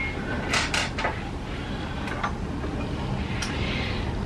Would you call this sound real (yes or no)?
yes